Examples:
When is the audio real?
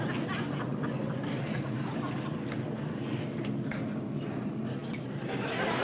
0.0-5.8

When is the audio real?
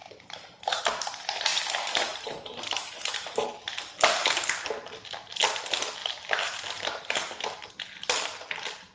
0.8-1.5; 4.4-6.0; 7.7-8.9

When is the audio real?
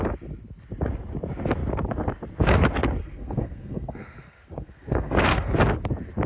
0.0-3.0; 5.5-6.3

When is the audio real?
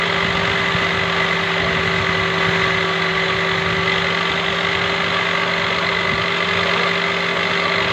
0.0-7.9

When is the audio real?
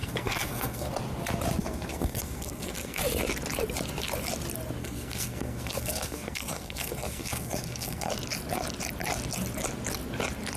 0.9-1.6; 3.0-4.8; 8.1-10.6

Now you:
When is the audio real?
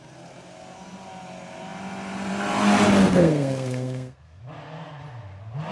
0.0-3.0; 4.4-5.7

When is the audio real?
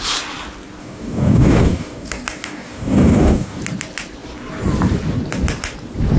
0.0-0.8; 3.6-6.2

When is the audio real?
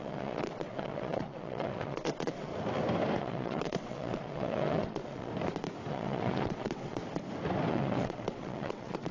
2.5-3.2; 5.3-5.9; 7.0-7.7